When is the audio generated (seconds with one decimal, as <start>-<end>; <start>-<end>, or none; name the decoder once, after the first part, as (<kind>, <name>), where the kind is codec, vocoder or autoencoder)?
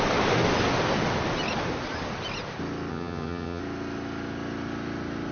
2.9-3.6 (vocoder, HiFi-GAN)